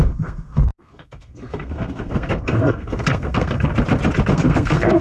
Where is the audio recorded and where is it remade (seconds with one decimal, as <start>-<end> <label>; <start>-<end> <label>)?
0.0-3.7 remade; 3.7-4.3 recorded; 4.3-5.0 remade